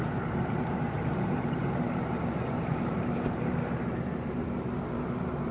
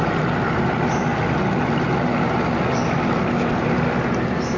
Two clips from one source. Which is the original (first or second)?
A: second